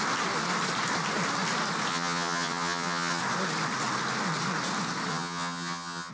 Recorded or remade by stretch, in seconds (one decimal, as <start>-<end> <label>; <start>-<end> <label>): 0.0-1.9 recorded; 1.9-3.2 remade; 3.2-5.1 recorded; 5.1-6.1 remade